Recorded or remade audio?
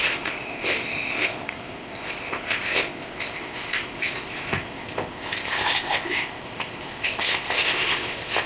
remade